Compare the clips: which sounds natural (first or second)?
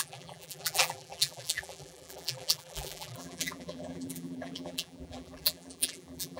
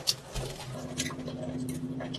second